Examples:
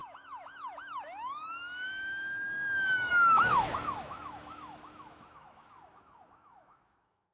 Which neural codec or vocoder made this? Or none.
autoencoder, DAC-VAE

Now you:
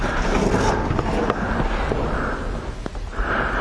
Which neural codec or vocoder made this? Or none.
none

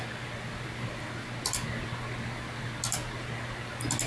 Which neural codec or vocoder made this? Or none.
none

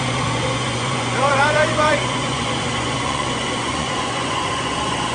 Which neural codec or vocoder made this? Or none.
vocoder, Vocos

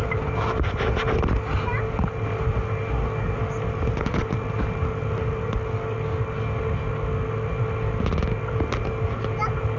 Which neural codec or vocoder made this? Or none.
none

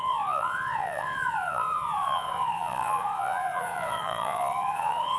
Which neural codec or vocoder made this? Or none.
vocoder, Vocos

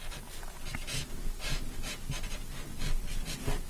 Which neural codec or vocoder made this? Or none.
none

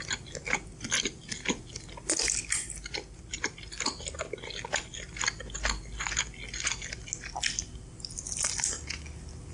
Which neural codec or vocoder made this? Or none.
none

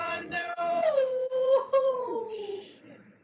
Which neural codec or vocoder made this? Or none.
vocoder, Vocos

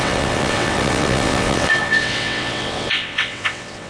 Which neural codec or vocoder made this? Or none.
vocoder, WaveNeXt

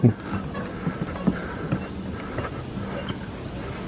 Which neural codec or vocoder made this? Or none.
none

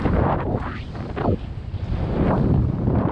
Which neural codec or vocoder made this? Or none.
vocoder, BigVGAN v2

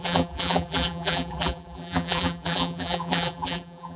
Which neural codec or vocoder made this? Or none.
vocoder, BigVGAN v2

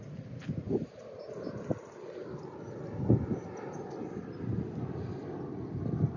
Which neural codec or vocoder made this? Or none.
none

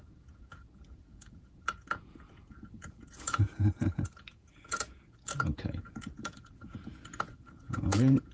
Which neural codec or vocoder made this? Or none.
vocoder, Vocos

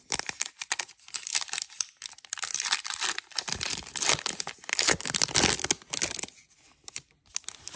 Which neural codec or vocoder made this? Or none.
none